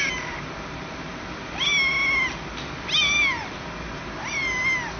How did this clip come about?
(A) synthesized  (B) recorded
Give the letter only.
B